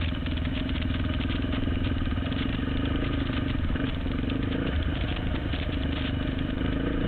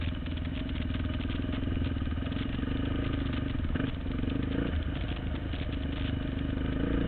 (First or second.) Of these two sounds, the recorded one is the second